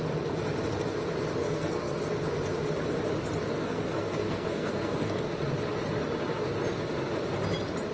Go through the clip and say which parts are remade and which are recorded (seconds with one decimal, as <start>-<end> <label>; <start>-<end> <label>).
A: 0.0-1.4 recorded; 1.4-2.0 remade; 2.0-3.6 recorded; 3.6-5.2 remade; 5.2-7.9 recorded